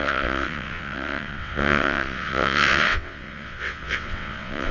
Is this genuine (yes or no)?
no